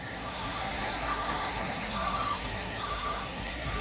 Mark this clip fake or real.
fake